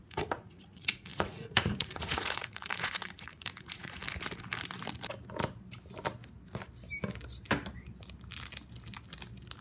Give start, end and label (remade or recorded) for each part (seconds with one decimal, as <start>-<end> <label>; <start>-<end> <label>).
0.0-4.0 remade; 4.0-9.6 recorded